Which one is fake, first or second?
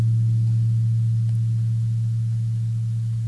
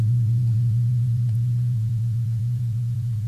second